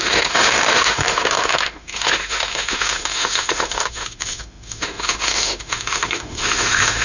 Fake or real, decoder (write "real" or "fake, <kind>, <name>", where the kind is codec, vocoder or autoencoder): fake, autoencoder, DAC-VAE